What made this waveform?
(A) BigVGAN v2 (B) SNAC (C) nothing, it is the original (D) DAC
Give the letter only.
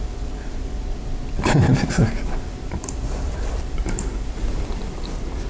A